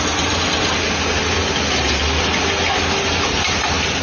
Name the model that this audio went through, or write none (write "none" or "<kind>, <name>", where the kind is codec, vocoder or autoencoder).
none